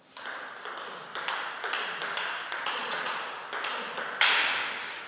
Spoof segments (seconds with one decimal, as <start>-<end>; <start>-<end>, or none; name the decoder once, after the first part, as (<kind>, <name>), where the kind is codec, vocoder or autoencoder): 2.5-3.2 (vocoder, Vocos)